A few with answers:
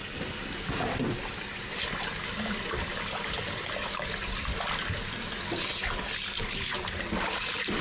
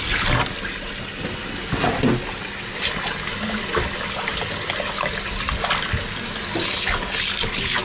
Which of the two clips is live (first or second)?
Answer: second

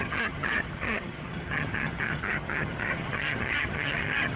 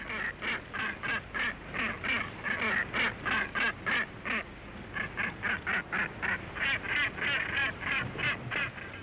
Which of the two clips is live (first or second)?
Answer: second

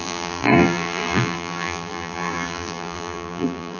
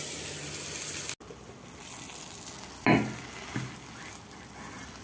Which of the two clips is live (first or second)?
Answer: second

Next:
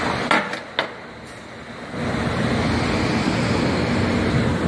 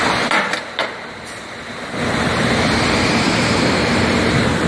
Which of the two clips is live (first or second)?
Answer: first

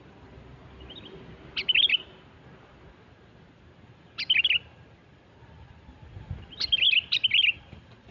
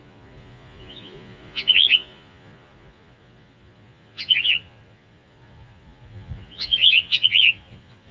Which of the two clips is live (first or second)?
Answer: first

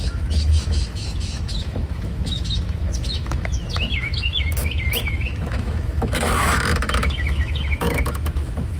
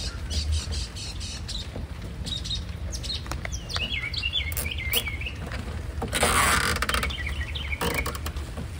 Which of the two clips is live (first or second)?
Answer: second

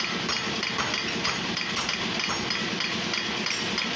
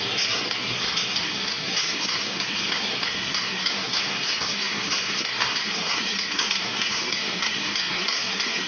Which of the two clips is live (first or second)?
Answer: first